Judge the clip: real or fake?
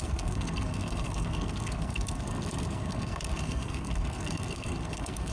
fake